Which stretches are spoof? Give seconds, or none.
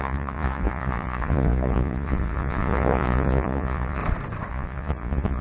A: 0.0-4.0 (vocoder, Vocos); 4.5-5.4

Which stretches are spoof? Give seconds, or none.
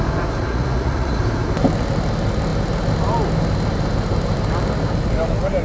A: 0.4-1.2 (vocoder, Vocos)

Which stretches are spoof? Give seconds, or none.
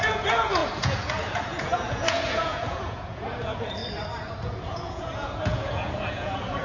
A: 0.0-3.8 (vocoder, Vocos); 4.4-6.6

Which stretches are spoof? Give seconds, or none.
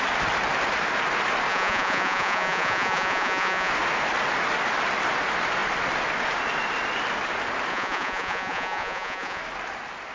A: 1.5-3.7 (vocoder, Vocos); 7.7-9.4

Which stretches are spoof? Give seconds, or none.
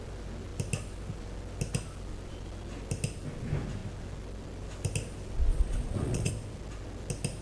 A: 5.5-6.3 (vocoder, Vocos)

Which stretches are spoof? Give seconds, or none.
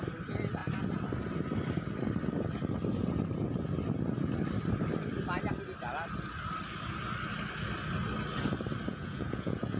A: 8.9-9.8 (vocoder, Vocos)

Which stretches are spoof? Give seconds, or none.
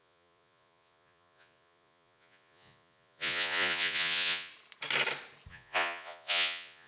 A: 0.0-4.5 (vocoder, Vocos); 5.5-6.9